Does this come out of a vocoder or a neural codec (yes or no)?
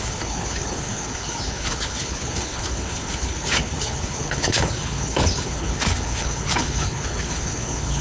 yes